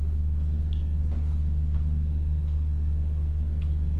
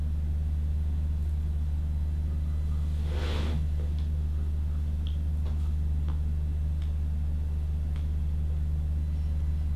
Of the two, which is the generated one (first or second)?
first